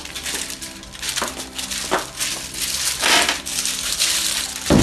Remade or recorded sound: recorded